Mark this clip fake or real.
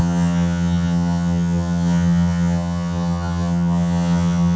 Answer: fake